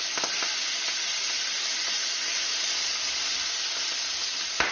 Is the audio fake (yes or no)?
no